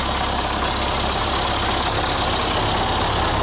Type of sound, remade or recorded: recorded